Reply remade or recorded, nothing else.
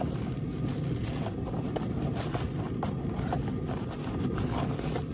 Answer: recorded